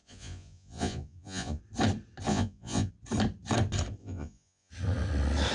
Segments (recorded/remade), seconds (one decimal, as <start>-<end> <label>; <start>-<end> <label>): 0.0-1.6 remade; 1.6-2.3 recorded; 2.3-2.9 remade; 2.9-4.0 recorded; 4.0-4.7 remade; 4.7-5.5 recorded